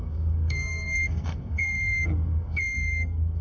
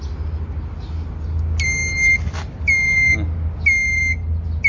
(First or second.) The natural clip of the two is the second